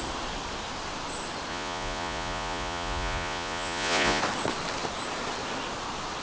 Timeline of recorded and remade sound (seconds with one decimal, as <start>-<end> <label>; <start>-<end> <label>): 0.0-1.5 recorded; 1.5-4.2 remade; 4.2-6.2 recorded